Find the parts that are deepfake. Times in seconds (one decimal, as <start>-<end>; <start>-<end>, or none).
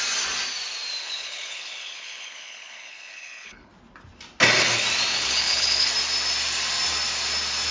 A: 1.0-3.7; 5.1-5.9